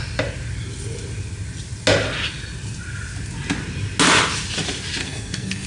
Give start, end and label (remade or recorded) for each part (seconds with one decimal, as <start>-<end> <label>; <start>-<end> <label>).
0.0-5.0 recorded; 5.0-5.7 remade